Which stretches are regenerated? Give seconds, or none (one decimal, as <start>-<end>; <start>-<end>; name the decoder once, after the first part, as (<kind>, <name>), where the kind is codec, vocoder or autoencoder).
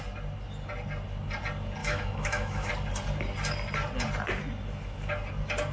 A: 1.8-2.7 (autoencoder, DAC-VAE)